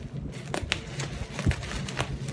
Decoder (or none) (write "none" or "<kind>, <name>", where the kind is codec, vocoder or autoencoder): none